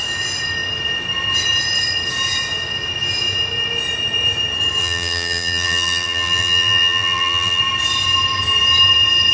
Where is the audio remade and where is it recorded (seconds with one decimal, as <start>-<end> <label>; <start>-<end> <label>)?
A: 0.0-4.8 recorded; 4.8-7.6 remade; 7.6-9.3 recorded